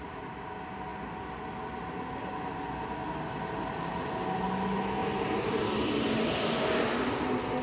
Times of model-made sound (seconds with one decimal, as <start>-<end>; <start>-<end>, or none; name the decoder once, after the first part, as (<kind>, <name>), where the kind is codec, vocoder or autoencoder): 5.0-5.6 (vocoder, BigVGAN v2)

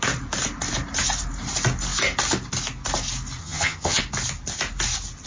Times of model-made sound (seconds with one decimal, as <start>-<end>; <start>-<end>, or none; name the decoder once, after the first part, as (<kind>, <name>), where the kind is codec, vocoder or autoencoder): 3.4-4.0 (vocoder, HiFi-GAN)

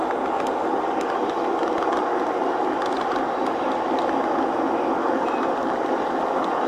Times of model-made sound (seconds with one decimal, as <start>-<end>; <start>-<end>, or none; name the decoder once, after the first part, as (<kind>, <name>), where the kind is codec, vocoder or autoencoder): 5.6-6.1 (vocoder, BigVGAN v2)